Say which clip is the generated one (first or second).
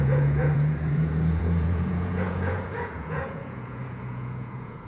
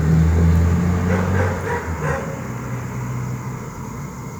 first